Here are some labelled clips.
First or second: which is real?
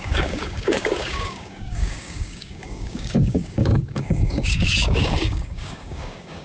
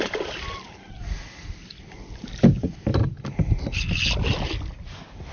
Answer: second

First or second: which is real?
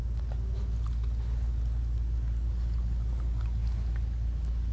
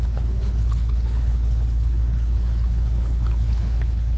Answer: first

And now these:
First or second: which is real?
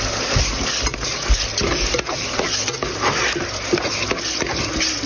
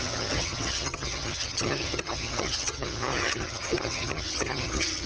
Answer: first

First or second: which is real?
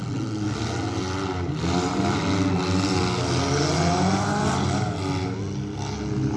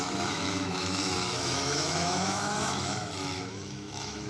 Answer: first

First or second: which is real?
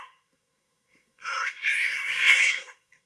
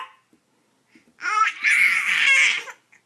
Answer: second